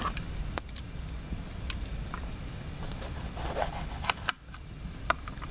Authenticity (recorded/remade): recorded